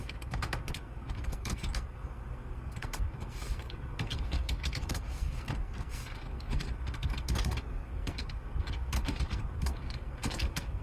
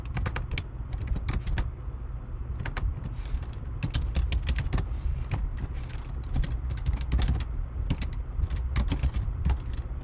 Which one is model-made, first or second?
first